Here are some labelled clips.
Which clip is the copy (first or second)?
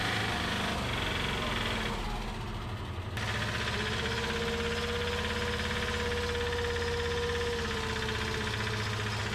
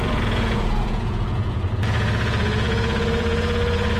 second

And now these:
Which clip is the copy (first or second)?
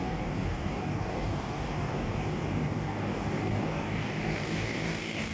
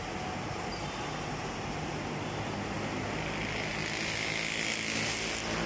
first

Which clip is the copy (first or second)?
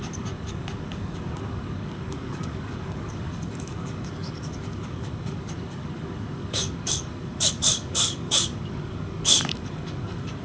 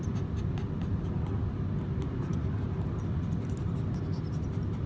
first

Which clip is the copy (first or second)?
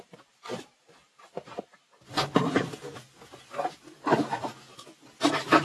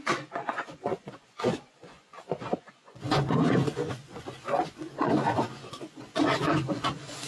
second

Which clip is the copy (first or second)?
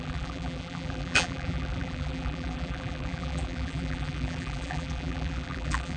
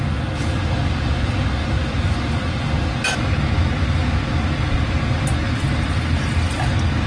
first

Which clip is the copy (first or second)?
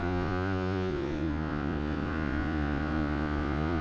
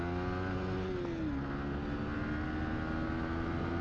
first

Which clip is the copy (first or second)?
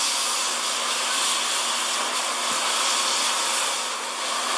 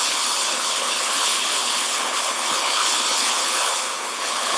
second